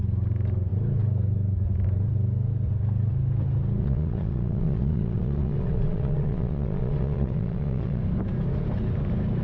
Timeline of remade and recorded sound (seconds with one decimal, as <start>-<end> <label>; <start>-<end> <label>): 0.0-3.8 recorded; 3.8-8.0 remade; 8.0-9.4 recorded

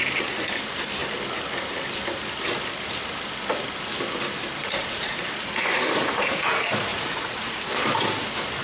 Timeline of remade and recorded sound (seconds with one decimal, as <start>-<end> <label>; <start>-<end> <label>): 0.0-4.6 recorded; 4.6-6.5 remade; 6.5-6.9 recorded; 6.9-7.6 remade; 7.6-8.6 recorded